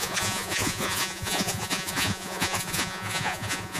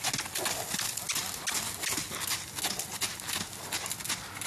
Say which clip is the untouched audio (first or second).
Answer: second